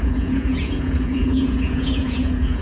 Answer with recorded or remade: remade